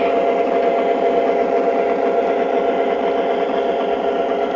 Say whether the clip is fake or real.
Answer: real